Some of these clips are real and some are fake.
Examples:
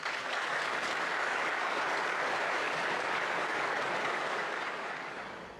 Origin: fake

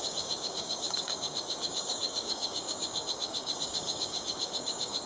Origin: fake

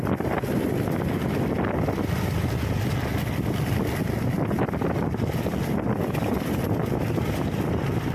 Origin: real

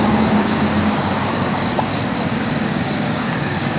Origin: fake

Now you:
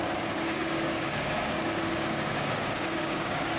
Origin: fake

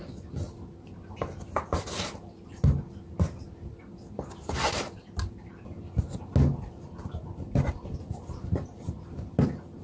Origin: real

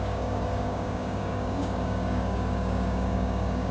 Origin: fake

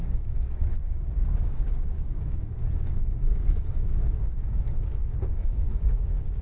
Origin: fake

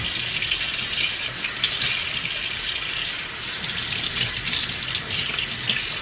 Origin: real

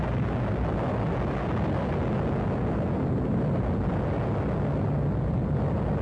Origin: real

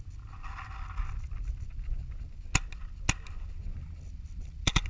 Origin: real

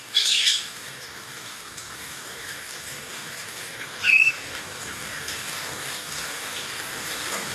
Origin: fake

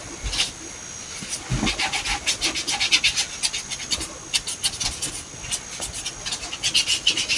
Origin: real